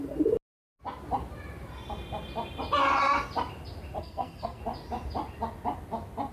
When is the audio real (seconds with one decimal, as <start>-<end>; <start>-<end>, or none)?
0.0-4.0; 4.6-6.3